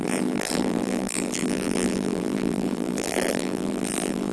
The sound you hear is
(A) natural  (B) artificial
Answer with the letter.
B